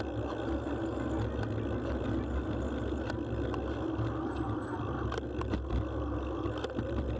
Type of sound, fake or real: real